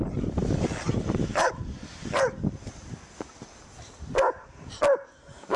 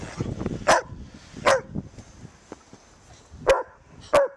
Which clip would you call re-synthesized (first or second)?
first